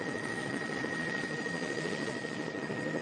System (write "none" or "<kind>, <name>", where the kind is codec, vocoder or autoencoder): vocoder, Vocos